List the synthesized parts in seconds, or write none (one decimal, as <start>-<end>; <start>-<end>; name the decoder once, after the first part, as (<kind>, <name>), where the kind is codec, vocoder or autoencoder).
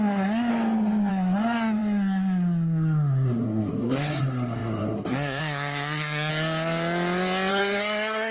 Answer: 0.0-0.5 (codec, SNAC); 1.1-6.3; 7.5-8.3